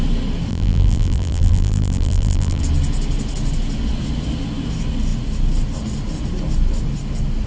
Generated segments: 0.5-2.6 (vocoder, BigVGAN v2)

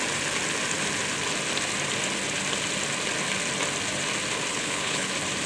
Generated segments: 4.5-5.1 (codec, HILCodec)

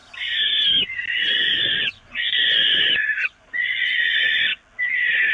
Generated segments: 1.1-4.5 (vocoder, Vocos)

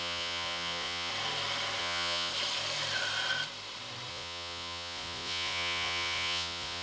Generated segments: 0.0-1.1 (vocoder, Vocos); 1.8-2.3; 4.1-6.8

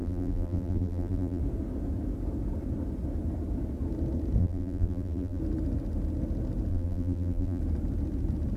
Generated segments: 0.0-1.4 (vocoder, BigVGAN v2); 4.4-5.4; 6.7-7.6

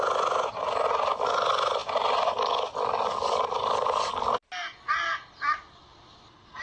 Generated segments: none

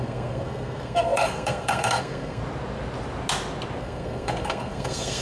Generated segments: 0.0-2.4 (codec, SNAC); 3.8-5.2

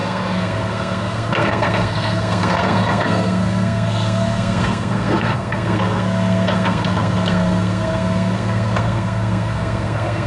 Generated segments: 0.0-10.3 (codec, SNAC)